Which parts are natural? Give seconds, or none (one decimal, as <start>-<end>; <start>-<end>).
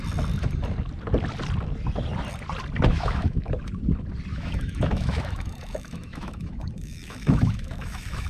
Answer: 0.0-2.9; 3.5-4.3